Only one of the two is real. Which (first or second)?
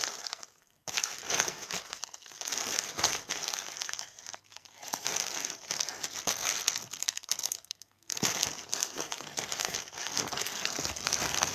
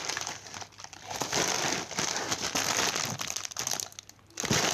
second